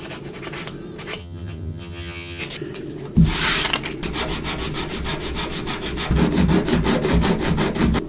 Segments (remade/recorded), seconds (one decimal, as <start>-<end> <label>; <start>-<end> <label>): 0.0-1.2 recorded; 1.2-2.4 remade; 2.4-8.1 recorded